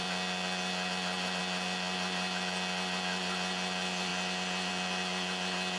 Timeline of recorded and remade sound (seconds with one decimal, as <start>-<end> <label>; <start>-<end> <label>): 0.0-5.8 recorded